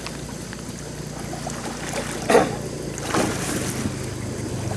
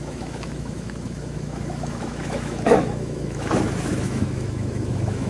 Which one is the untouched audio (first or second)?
first